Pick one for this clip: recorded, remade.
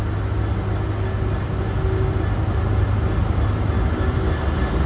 recorded